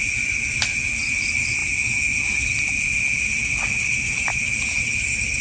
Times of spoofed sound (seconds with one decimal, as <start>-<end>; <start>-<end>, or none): none